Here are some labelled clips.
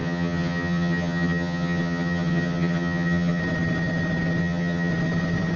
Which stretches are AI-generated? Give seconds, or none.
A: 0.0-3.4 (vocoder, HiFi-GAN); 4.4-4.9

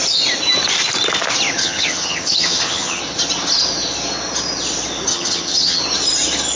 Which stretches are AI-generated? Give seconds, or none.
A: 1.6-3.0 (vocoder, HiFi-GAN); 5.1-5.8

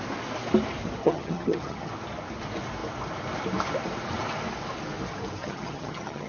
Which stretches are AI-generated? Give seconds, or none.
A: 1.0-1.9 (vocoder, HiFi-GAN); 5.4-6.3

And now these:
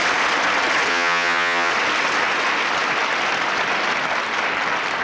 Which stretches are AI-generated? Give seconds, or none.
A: 0.9-1.7 (vocoder, HiFi-GAN)

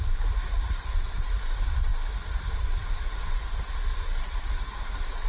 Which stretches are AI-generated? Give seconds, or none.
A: none

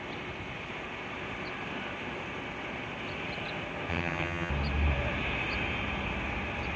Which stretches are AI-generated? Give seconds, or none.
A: 3.9-4.5 (vocoder, HiFi-GAN)

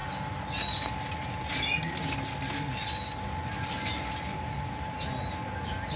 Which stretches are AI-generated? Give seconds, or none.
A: none